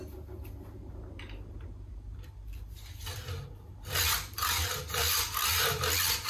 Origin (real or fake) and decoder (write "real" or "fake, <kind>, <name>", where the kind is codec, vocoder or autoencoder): real